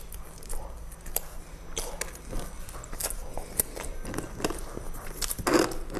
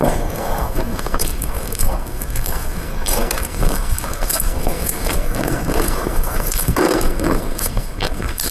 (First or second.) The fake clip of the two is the second